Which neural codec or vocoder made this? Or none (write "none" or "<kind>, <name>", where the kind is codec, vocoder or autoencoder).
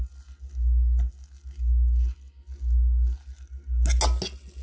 none